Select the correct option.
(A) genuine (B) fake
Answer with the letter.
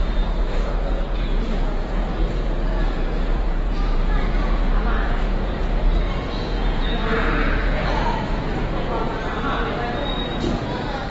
B